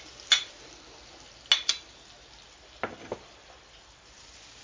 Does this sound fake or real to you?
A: real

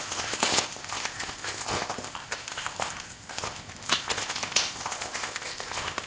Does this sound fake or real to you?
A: fake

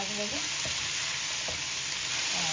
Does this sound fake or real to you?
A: real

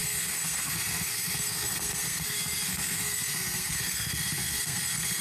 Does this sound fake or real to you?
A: fake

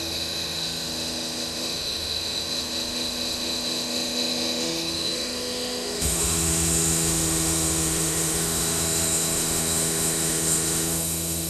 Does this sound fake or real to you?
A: fake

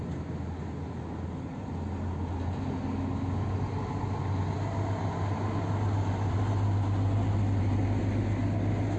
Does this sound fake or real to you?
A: real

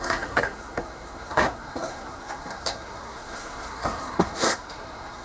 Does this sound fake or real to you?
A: fake